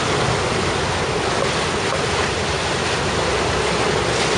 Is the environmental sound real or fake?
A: real